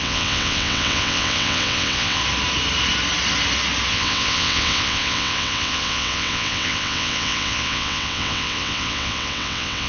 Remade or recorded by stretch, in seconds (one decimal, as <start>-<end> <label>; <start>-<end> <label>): 0.0-2.2 remade; 2.2-3.9 recorded; 3.9-9.9 remade